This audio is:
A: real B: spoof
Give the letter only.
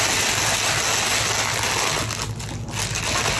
A